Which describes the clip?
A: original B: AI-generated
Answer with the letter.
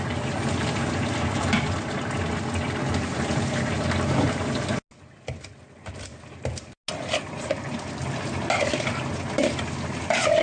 A